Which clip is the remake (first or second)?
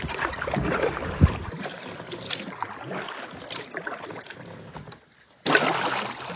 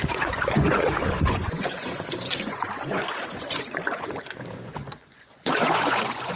second